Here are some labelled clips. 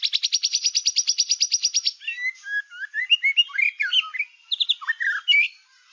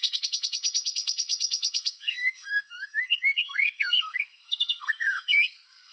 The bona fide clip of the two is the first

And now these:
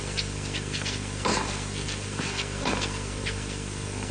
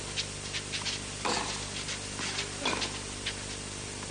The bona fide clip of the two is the second